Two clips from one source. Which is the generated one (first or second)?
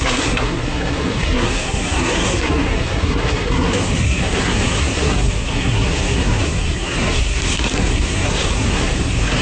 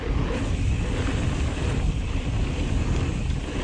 first